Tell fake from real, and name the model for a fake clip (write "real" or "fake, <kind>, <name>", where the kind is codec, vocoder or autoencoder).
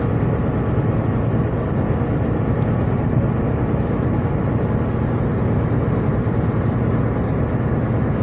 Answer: real